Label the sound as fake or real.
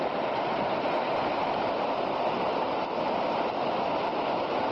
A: real